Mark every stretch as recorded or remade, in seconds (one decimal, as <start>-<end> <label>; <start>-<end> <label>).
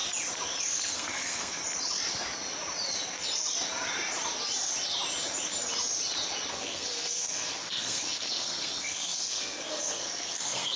0.0-0.9 recorded; 0.9-1.6 remade; 1.6-6.5 recorded; 6.5-10.8 remade